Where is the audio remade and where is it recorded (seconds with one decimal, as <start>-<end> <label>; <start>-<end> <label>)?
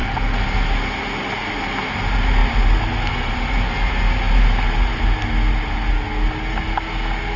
0.0-7.4 recorded